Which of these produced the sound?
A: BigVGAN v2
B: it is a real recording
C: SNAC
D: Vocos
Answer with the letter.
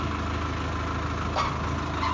B